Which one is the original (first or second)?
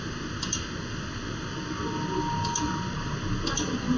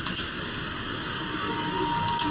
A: first